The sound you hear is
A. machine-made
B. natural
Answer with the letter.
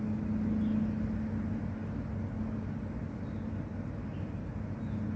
B